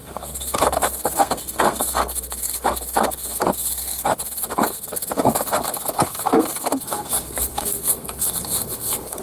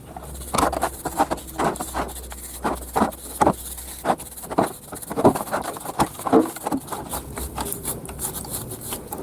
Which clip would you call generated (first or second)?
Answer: first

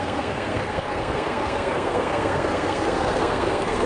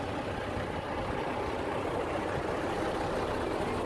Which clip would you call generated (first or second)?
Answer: first